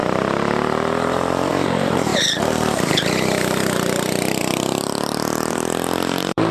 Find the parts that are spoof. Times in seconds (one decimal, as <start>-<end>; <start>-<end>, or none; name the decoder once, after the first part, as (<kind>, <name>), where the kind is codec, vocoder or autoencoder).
0.0-6.5 (vocoder, BigVGAN v2)